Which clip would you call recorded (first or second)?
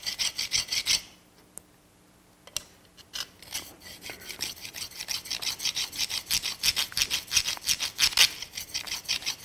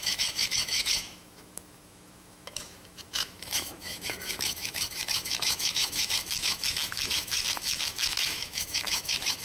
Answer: first